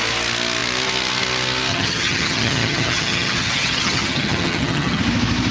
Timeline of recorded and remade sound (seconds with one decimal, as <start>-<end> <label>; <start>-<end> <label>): 0.0-1.7 recorded; 1.7-5.0 remade; 5.0-5.5 recorded

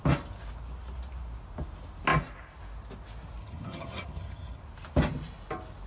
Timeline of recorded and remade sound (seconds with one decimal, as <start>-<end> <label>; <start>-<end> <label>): 0.0-3.4 recorded; 3.4-4.6 remade; 4.6-5.9 recorded

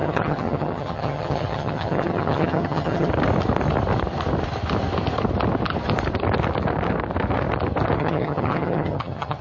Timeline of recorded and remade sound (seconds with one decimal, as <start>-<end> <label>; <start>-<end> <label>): 0.0-3.1 remade; 3.1-8.0 recorded; 8.0-9.4 remade

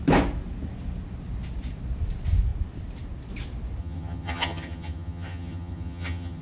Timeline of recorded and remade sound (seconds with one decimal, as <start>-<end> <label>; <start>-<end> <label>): 0.0-3.8 recorded; 3.8-6.4 remade

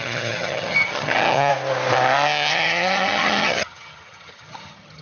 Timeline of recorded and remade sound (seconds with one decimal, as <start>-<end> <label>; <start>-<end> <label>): 0.0-1.5 remade; 1.5-2.5 recorded; 2.5-5.0 remade